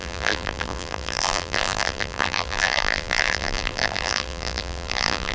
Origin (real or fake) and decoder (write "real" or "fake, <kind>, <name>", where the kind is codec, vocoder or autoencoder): fake, vocoder, BigVGAN v2